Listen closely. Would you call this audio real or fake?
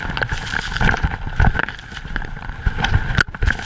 real